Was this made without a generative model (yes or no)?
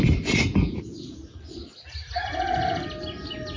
yes